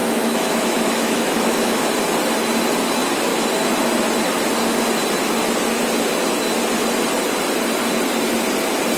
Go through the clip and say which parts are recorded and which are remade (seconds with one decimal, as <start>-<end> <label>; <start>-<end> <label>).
0.0-1.8 remade; 1.8-9.0 recorded